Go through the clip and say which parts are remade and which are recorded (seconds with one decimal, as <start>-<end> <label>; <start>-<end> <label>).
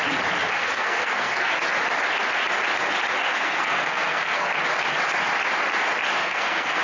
0.0-0.6 recorded; 0.6-1.5 remade; 1.5-3.3 recorded; 3.3-4.5 remade; 4.5-6.2 recorded; 6.2-6.8 remade